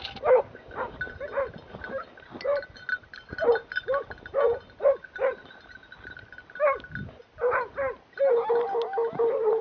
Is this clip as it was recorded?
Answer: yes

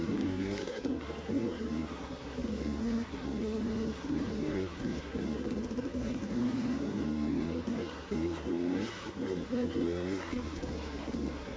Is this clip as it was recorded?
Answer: no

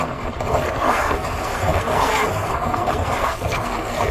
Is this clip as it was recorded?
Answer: no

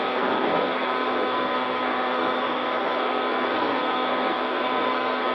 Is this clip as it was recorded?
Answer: no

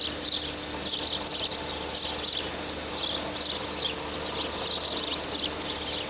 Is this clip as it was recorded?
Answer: yes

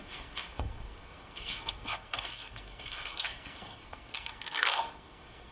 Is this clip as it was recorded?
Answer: no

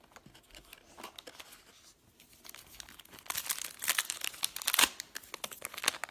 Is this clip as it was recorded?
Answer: yes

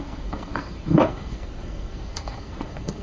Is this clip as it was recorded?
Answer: no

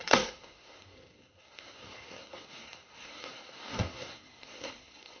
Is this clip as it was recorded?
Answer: no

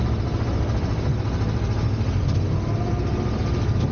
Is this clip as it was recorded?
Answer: yes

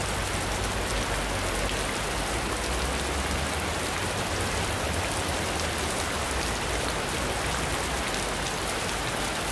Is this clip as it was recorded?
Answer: yes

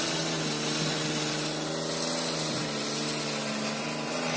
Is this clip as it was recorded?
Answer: yes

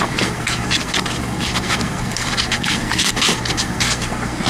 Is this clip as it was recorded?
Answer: no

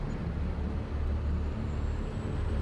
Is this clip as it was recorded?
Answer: yes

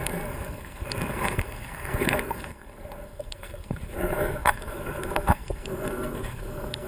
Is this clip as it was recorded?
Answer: no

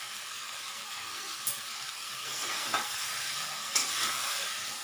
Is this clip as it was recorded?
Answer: no